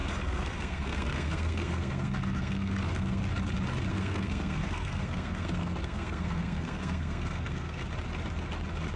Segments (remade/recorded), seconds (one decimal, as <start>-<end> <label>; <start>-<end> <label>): 0.0-3.2 remade; 3.2-3.9 recorded; 3.9-7.8 remade; 7.8-9.0 recorded